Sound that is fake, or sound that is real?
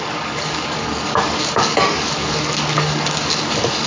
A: fake